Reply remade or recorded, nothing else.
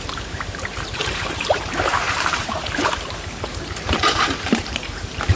remade